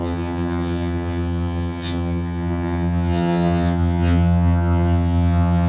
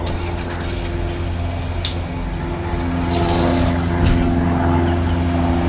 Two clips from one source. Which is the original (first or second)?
second